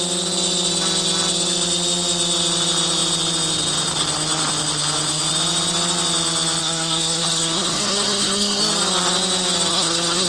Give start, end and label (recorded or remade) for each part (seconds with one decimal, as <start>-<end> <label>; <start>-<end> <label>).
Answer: 0.0-6.6 recorded; 6.6-8.6 remade; 8.6-9.7 recorded; 9.7-10.3 remade